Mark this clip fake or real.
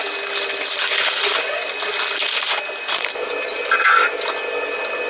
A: real